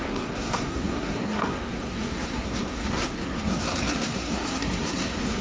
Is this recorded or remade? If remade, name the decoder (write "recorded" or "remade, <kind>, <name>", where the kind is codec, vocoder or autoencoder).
remade, codec, SNAC